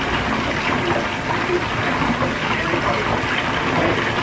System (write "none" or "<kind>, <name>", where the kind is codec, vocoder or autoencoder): none